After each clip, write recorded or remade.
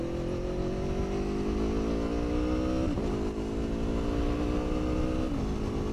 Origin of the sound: recorded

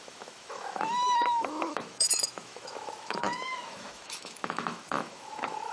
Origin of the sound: remade